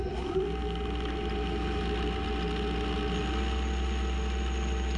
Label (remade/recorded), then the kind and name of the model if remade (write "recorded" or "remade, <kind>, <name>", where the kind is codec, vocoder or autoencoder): recorded